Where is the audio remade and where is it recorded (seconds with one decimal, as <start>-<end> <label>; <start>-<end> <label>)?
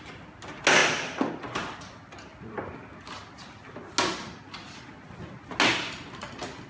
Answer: 0.0-6.7 recorded